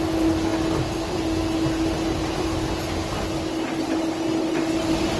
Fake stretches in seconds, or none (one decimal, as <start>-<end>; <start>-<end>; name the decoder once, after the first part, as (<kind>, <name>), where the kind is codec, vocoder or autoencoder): none